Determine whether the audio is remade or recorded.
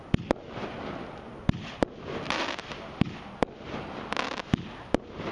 recorded